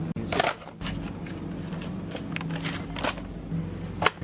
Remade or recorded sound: recorded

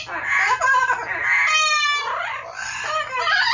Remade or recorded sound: recorded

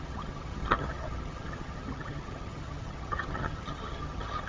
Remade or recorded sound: remade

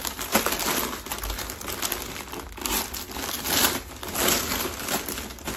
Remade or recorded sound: recorded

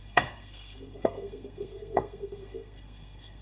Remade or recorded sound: remade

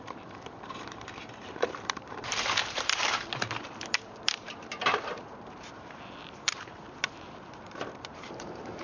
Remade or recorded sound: remade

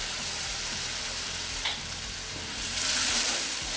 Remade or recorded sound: remade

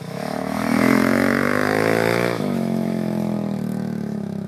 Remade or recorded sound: remade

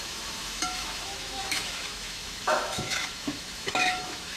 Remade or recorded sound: remade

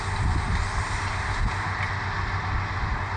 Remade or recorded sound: recorded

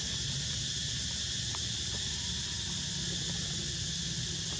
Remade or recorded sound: recorded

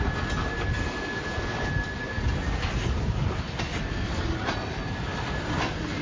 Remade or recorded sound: recorded